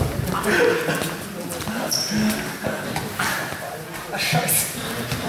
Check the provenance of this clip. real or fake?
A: real